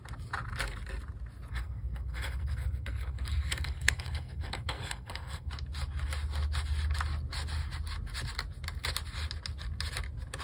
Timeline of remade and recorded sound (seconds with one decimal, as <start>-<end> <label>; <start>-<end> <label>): 0.0-1.5 recorded; 1.5-5.5 remade; 5.5-10.4 recorded